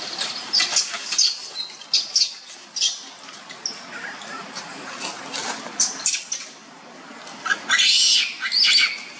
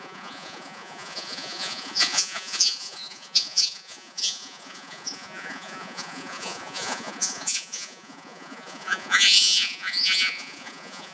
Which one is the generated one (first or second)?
second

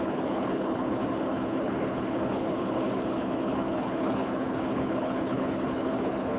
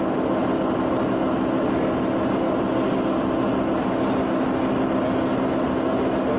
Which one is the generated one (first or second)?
first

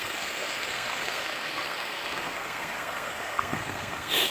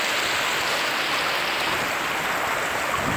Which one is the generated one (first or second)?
first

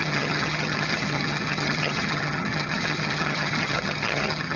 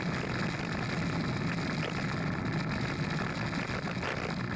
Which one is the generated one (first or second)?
first